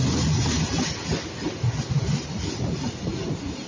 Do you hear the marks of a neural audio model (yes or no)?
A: no